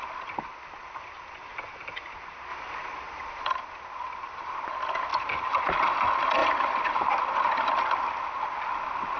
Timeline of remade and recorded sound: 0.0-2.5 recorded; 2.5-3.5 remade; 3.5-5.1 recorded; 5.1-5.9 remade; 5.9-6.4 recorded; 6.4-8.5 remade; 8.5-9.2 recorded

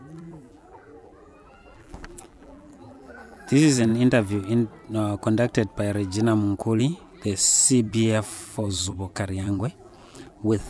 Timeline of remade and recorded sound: 0.0-3.9 remade; 3.9-6.8 recorded; 6.8-10.7 remade

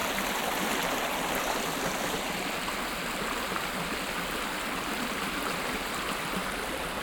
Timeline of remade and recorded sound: 0.0-7.0 recorded

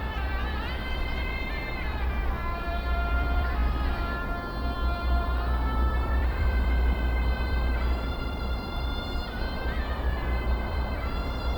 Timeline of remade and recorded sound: 0.0-11.6 remade